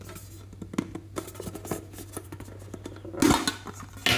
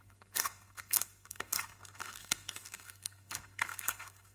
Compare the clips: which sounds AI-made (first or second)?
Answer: second